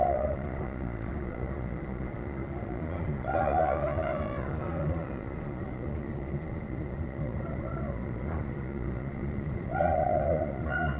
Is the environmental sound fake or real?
fake